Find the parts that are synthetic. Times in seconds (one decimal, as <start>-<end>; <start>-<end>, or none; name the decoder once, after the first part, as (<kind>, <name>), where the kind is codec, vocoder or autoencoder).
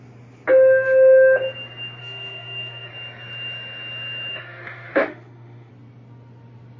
2.0-2.9 (autoencoder, DAC-VAE); 4.3-5.7